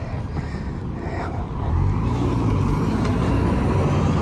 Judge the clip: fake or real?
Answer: real